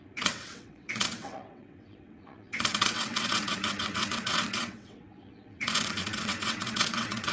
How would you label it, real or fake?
fake